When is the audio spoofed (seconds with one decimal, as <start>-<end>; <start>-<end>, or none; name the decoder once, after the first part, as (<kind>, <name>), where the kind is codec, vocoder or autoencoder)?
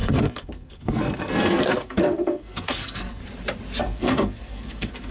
0.0-3.2 (codec, SNAC); 3.8-5.1